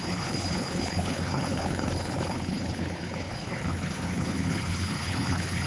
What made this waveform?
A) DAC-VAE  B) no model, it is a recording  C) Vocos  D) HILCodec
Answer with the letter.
D